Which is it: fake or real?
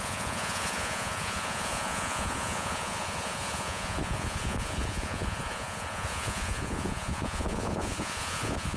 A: fake